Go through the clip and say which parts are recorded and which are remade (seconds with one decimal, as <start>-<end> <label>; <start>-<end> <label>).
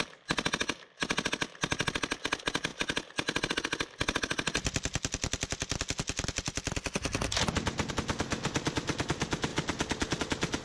0.0-10.6 recorded